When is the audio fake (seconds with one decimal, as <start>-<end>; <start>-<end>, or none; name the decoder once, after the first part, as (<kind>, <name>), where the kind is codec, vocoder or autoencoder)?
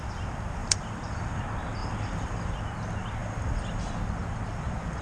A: 0.6-1.4 (vocoder, BigVGAN v2); 1.8-2.5; 3.2-3.9